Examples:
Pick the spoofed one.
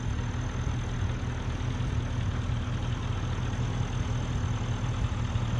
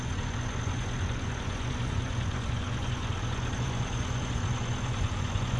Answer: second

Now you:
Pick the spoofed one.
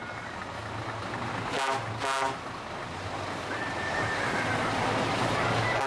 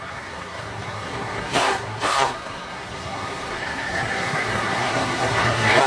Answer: second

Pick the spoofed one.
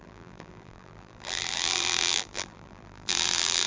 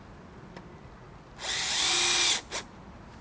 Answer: first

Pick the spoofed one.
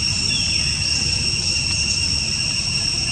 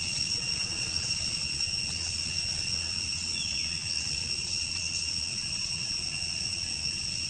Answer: second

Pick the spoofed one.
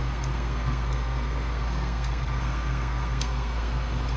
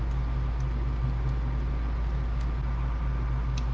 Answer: first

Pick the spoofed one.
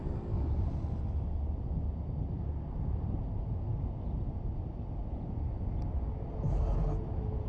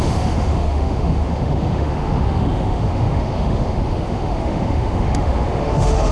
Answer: second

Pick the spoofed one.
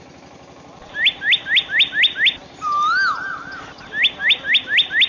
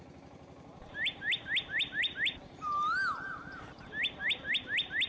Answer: second